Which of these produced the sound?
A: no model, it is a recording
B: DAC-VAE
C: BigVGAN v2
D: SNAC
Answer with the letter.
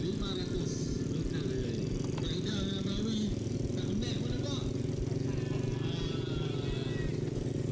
A